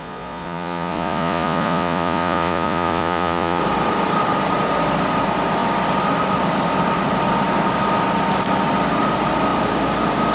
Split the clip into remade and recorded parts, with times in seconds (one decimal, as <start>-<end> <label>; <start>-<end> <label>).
0.0-3.6 remade; 3.6-10.3 recorded